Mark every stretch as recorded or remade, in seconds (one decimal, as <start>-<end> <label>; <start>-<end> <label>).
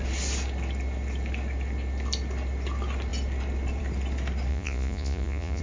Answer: 0.0-4.5 recorded; 4.5-5.6 remade